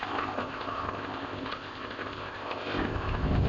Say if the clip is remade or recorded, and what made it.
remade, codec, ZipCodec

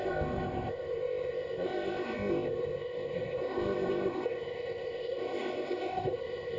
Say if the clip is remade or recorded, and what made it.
remade, codec, ZipCodec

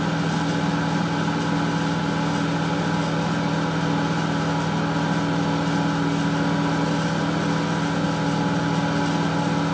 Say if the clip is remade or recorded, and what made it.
recorded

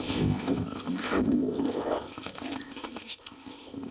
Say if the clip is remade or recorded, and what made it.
remade, codec, ZipCodec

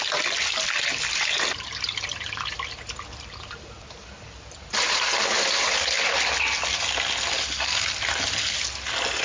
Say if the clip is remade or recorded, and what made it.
recorded